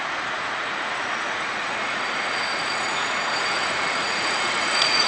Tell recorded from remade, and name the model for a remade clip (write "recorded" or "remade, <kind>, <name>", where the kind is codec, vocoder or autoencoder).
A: remade, vocoder, Vocos